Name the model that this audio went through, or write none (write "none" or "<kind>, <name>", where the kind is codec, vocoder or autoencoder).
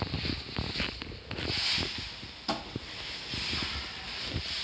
none